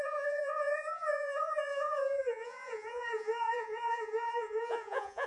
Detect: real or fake fake